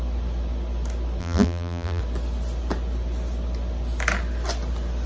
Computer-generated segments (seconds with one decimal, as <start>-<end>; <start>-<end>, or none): 1.2-2.0